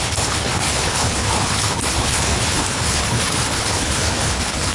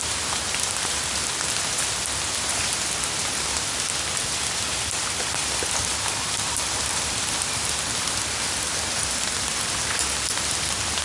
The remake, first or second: first